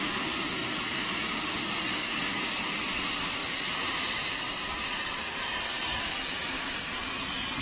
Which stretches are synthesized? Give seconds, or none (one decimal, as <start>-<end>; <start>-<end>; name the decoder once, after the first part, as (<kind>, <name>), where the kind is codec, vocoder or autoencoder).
0.6-1.2 (vocoder, BigVGAN v2); 3.4-6.2